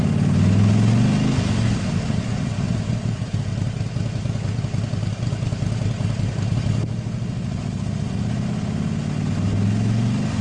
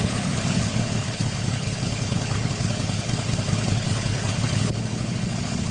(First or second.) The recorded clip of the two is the first